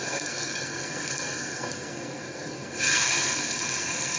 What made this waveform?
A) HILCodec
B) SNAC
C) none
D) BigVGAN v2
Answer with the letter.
B